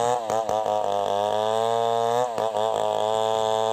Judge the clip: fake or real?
real